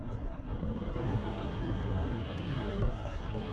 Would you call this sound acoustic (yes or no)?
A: no